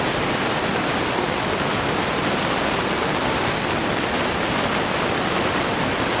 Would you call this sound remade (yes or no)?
no